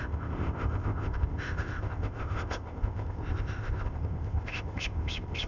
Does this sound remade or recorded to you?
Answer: remade